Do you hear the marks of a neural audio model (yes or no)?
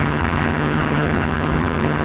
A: yes